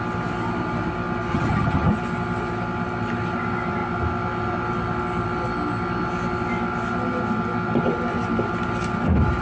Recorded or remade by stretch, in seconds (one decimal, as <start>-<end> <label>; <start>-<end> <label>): 0.0-1.3 recorded; 1.3-1.9 remade; 1.9-9.4 recorded